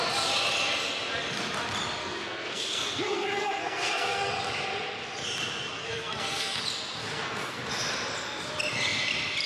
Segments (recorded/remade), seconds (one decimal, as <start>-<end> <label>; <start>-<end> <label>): 0.0-2.0 recorded; 2.0-4.3 remade; 4.3-5.8 recorded; 5.8-6.6 remade; 6.6-7.0 recorded; 7.0-7.6 remade; 7.6-9.5 recorded